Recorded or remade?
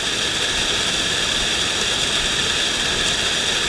recorded